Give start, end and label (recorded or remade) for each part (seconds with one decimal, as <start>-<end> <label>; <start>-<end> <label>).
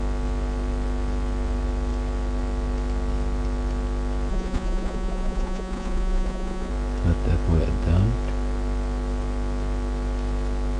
0.0-4.3 recorded; 4.3-6.7 remade; 6.7-10.8 recorded